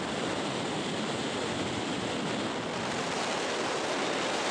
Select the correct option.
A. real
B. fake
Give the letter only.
A